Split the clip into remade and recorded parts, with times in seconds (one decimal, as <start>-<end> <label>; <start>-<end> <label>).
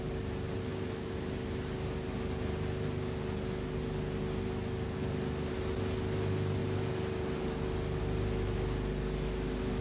0.0-9.8 recorded